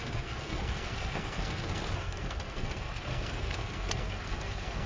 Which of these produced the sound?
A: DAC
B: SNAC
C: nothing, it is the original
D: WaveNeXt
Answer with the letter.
B